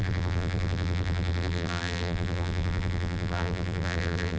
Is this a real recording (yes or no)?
no